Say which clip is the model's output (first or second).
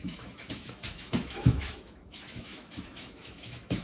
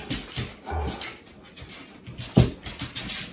first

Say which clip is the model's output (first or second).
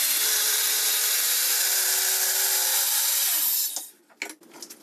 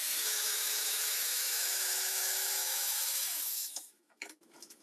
second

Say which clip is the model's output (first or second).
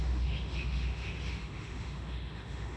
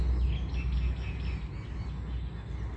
first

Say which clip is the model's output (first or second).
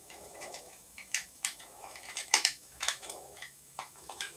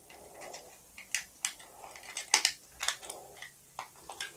first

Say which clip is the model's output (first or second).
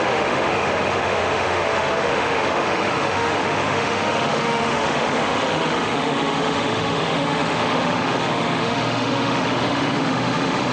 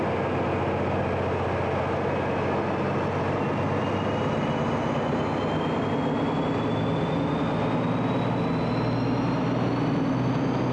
first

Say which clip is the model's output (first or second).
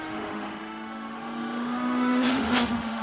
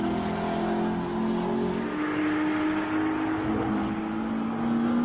first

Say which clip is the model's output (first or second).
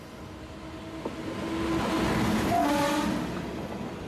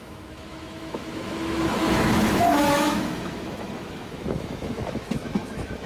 second